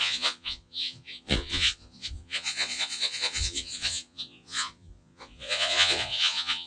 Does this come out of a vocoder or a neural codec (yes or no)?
yes